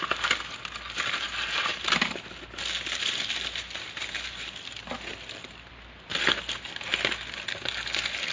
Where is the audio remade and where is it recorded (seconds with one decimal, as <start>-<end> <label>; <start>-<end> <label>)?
0.0-8.3 recorded